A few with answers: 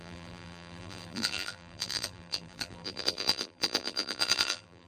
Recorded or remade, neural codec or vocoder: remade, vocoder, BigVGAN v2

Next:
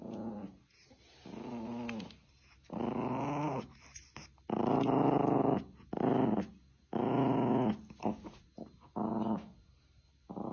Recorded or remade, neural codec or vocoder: recorded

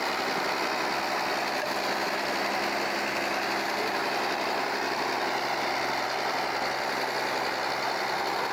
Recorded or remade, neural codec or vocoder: recorded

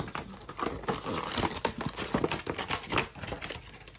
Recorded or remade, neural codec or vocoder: recorded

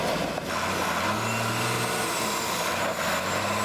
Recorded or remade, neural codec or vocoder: recorded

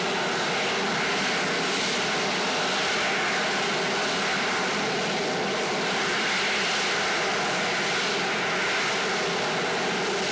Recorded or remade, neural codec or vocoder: recorded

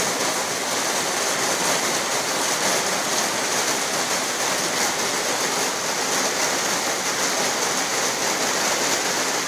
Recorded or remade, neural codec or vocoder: recorded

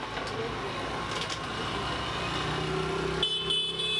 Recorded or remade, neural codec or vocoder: recorded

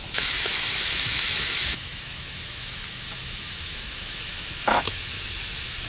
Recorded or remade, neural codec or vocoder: remade, autoencoder, DAC-VAE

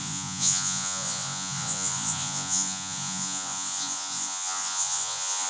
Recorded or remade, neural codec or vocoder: remade, vocoder, Vocos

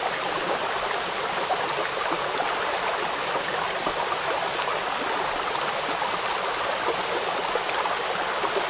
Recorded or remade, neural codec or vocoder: recorded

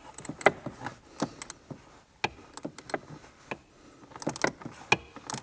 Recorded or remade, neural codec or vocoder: recorded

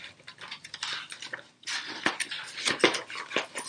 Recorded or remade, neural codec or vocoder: recorded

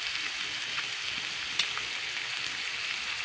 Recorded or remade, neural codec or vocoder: recorded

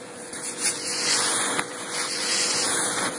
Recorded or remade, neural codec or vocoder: remade, vocoder, Vocos